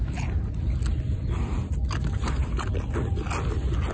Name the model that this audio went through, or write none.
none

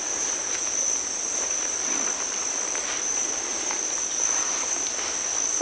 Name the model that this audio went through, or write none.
none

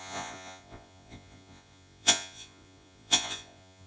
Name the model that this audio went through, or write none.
vocoder, Vocos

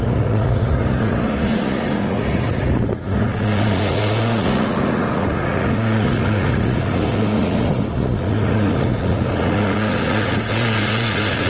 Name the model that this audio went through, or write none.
vocoder, Vocos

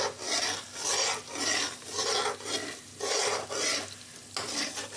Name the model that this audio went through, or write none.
none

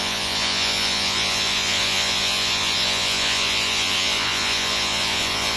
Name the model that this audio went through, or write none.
vocoder, Vocos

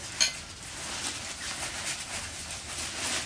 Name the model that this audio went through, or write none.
none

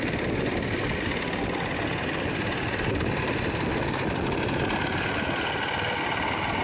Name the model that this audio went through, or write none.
none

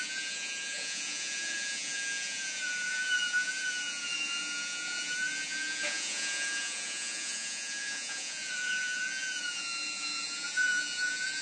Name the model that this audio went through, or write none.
vocoder, Vocos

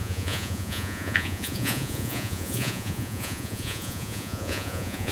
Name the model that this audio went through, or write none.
vocoder, Vocos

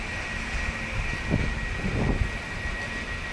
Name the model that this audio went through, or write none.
none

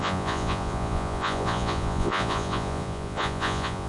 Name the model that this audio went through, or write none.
vocoder, Vocos